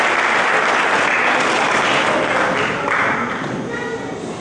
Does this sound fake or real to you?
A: real